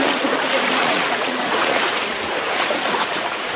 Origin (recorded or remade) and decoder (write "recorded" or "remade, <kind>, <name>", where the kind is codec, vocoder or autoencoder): remade, vocoder, Vocos